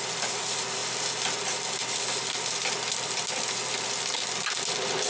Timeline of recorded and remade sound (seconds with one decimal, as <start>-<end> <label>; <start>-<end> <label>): 0.0-5.1 recorded